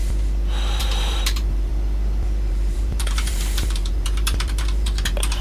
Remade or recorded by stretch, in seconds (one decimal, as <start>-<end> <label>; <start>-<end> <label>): 0.0-0.8 recorded; 0.8-1.7 remade; 1.7-2.5 recorded; 2.5-5.4 remade